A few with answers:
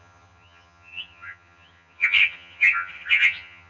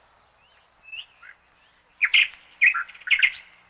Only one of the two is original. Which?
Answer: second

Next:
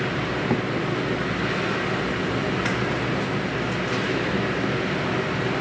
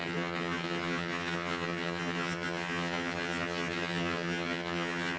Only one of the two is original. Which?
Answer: first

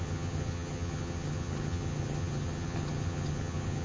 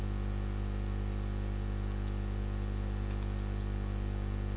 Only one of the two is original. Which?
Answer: second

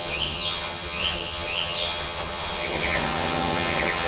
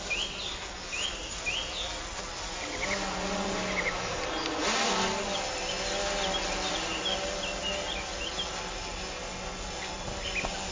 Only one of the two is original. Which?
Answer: second